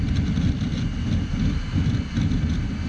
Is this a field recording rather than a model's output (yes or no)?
yes